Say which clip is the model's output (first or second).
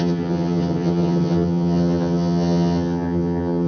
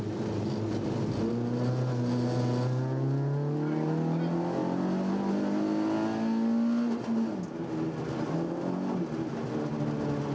first